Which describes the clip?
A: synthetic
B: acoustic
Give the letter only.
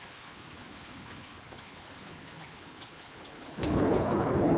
A